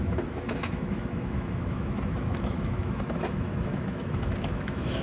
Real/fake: fake